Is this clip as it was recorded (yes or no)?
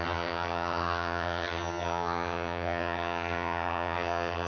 no